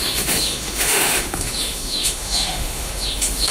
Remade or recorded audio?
remade